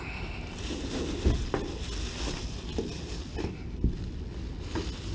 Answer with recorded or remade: recorded